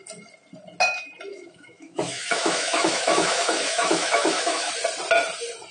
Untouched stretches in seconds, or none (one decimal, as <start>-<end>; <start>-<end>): 0.0-1.3; 4.7-5.7